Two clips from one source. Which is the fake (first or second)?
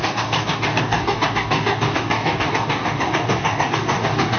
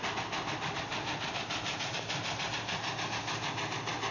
first